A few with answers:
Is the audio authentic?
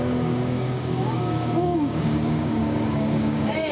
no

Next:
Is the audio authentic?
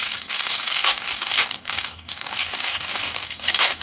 no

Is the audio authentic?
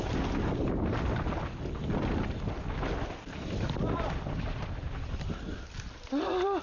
yes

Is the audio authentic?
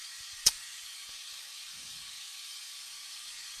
no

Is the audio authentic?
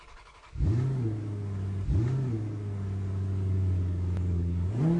no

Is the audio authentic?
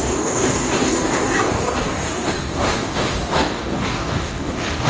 no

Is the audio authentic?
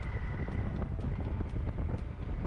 yes